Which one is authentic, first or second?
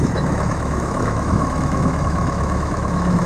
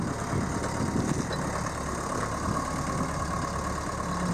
second